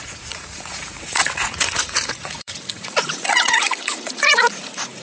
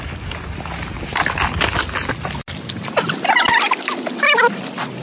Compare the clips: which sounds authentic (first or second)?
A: second